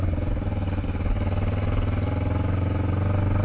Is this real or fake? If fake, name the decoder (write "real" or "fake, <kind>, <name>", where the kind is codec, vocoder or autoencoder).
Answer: real